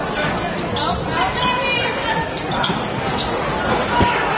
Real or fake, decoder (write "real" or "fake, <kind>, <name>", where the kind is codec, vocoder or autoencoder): real